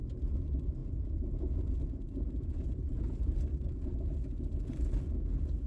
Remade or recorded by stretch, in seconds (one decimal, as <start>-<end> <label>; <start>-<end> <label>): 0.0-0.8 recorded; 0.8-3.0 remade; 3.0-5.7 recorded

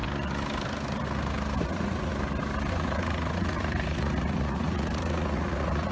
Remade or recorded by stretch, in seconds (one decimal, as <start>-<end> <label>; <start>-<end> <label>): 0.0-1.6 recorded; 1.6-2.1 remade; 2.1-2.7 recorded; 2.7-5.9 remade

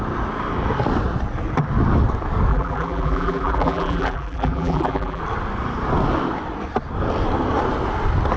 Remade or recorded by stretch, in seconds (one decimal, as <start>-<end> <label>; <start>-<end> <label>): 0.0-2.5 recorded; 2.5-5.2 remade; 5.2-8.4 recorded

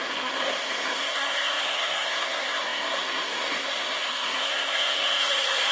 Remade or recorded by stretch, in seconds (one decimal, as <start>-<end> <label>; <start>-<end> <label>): 0.0-5.7 remade